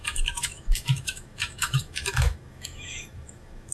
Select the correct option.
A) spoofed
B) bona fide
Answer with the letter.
A